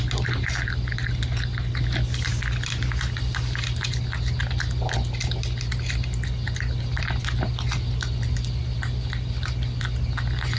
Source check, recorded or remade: recorded